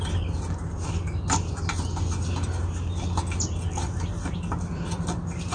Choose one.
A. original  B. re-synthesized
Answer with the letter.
A